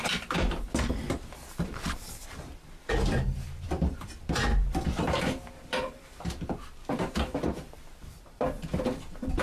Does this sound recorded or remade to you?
remade